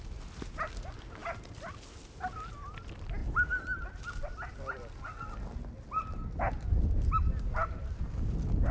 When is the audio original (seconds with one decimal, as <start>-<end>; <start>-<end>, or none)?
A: 0.0-8.7